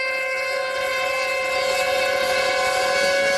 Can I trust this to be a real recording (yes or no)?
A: yes